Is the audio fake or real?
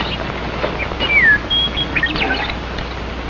real